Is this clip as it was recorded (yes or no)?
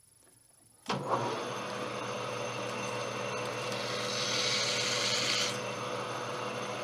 yes